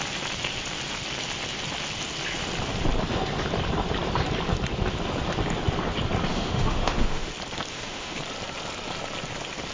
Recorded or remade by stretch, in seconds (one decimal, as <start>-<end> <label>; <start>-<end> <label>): 0.0-6.3 recorded; 6.3-7.3 remade; 7.3-7.7 recorded; 7.7-8.2 remade; 8.2-9.7 recorded